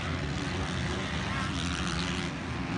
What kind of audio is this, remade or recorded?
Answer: recorded